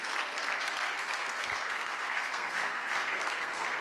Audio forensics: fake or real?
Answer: fake